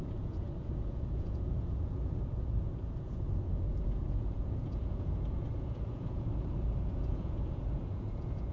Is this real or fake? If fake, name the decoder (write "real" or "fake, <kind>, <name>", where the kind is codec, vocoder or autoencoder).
fake, vocoder, Vocos